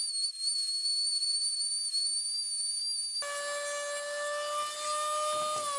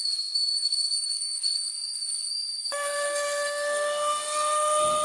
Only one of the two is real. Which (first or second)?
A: first